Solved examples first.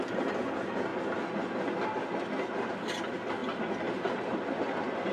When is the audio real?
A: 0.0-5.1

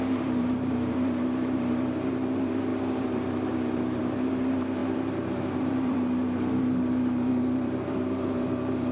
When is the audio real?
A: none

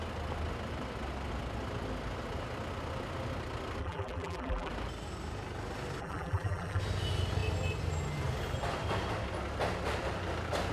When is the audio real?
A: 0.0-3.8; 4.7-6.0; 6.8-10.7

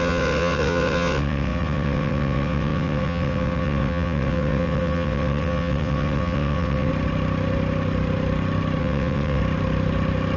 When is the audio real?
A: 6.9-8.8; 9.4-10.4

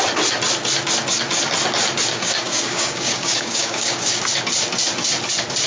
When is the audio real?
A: 0.0-2.1; 4.2-5.7